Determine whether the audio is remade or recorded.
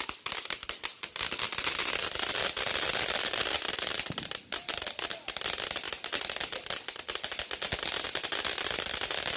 recorded